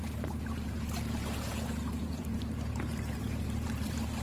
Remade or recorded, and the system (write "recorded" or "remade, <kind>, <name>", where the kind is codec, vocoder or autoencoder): remade, vocoder, BigVGAN v2